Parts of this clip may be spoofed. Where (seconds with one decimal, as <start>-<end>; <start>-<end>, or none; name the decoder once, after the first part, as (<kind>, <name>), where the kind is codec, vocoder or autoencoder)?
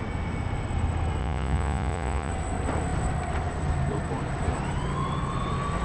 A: 1.2-2.3 (vocoder, Vocos)